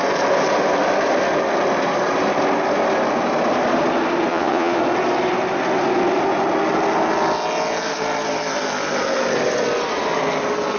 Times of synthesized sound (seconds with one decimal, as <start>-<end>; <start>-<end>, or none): 4.3-4.8